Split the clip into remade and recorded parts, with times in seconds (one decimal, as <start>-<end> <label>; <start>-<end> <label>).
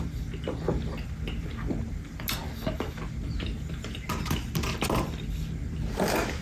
0.0-6.4 recorded